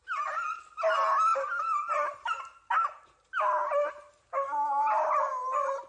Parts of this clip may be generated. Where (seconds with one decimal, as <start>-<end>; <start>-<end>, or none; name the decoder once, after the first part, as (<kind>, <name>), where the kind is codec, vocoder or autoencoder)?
none